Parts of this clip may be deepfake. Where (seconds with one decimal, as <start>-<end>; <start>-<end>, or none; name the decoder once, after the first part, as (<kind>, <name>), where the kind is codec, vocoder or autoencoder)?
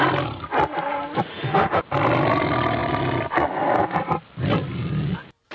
1.3-1.8 (autoencoder, DAC-VAE)